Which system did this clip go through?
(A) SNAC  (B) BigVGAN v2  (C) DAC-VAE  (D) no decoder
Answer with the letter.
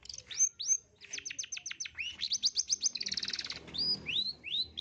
D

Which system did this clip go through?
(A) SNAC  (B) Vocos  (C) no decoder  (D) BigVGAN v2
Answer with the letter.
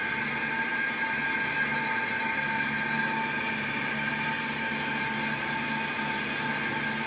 C